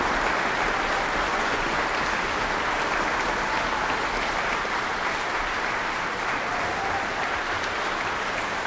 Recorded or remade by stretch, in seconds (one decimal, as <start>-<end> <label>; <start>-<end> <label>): 0.0-1.3 recorded; 1.3-1.8 remade; 1.8-8.7 recorded